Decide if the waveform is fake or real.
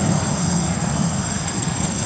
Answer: fake